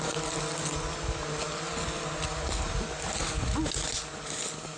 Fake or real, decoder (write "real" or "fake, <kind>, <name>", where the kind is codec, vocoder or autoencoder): real